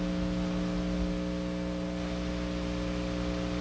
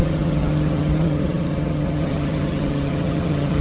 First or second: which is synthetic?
second